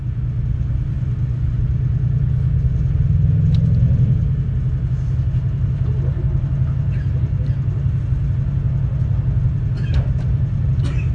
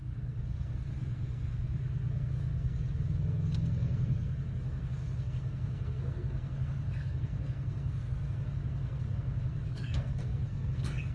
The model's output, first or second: second